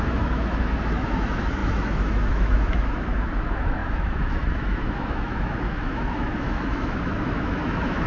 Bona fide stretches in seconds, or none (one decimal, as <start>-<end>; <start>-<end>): none